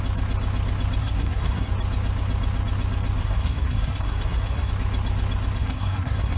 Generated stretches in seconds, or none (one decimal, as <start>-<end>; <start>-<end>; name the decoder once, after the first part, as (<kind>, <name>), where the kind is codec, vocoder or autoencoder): 1.0-1.7 (codec, SNAC); 3.2-4.7; 5.6-6.4